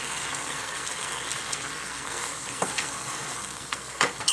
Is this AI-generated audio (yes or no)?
yes